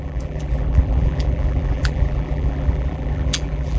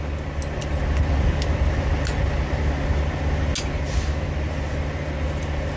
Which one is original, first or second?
second